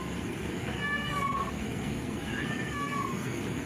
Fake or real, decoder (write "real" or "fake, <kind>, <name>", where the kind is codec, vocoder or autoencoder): fake, codec, SNAC